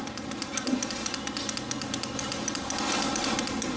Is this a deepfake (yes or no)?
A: no